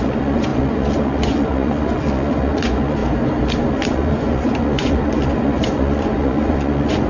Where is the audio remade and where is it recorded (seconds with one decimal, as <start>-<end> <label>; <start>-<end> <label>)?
0.0-3.0 remade; 3.0-3.7 recorded; 3.7-7.1 remade